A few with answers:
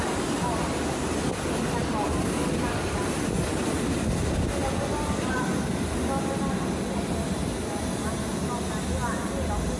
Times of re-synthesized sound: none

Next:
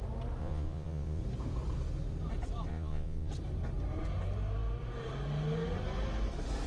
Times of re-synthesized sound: 0.4-1.2; 2.7-3.3

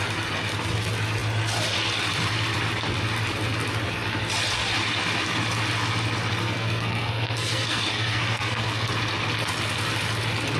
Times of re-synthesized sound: 6.4-8.9

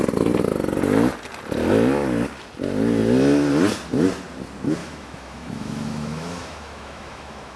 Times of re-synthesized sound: 4.8-7.6